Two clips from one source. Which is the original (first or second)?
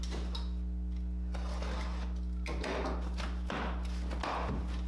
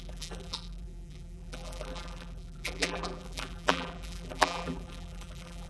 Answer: first